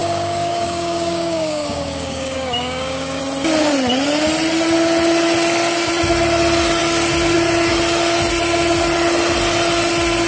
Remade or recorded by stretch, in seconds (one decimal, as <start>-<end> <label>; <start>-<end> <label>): 0.0-3.2 remade; 3.2-10.3 recorded